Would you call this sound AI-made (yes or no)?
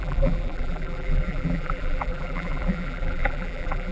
yes